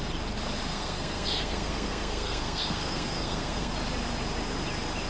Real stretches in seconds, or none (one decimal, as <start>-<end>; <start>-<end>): 0.0-0.7; 3.7-5.1